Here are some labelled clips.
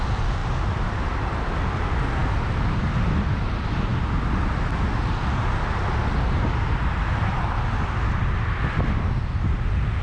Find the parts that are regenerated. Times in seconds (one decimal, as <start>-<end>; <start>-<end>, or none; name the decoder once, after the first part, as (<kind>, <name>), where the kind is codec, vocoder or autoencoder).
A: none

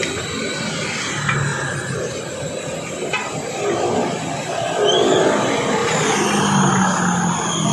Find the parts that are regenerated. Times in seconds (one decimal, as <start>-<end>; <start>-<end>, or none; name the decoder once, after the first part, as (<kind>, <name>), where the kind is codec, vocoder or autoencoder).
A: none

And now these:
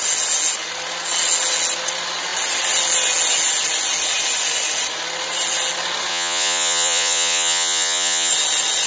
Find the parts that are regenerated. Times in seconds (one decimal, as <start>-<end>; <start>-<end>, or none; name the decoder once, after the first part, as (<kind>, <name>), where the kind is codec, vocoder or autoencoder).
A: 6.1-8.3 (vocoder, Vocos)